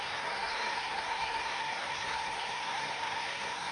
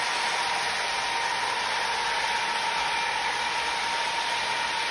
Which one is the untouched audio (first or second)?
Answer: second